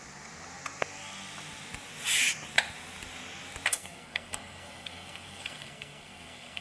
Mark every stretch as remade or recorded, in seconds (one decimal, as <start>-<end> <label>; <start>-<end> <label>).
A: 0.0-3.7 recorded; 3.7-6.6 remade